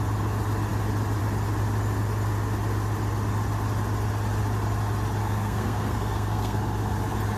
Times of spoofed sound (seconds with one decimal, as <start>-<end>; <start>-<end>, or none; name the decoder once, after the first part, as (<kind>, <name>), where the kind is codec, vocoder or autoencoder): 5.2-6.6 (codec, SNAC)